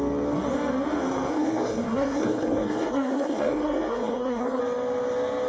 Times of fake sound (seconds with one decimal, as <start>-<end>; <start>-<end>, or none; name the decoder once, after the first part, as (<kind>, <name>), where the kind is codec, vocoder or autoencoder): 1.3-4.6 (codec, SNAC)